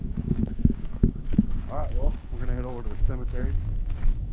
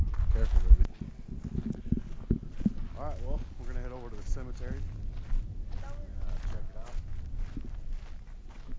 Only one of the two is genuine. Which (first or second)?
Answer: second